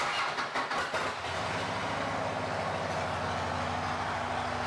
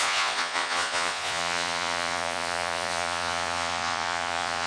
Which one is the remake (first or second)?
second